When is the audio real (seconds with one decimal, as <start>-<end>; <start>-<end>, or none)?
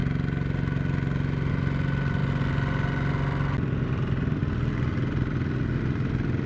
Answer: 0.0-6.5